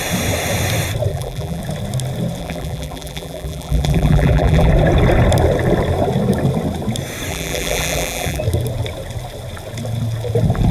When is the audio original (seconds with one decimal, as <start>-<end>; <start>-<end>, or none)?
0.0-1.1; 1.6-2.4; 4.7-7.3; 8.4-10.7